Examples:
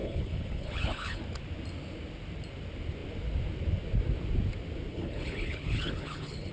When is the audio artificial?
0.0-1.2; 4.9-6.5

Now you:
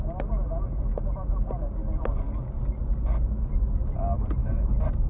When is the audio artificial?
none

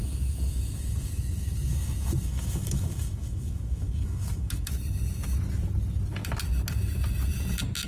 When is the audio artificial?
0.0-4.7

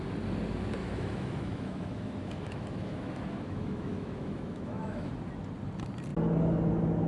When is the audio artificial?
0.8-5.1

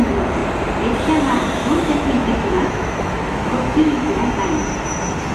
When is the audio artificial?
1.6-4.3

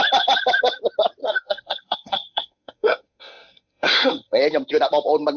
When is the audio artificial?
1.2-4.4